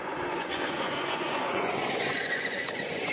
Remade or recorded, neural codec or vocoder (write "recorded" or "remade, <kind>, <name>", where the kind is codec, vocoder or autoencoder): remade, vocoder, Vocos